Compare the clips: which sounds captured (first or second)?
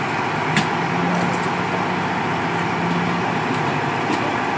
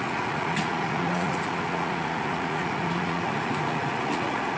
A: first